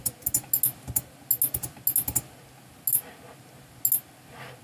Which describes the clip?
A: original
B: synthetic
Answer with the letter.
A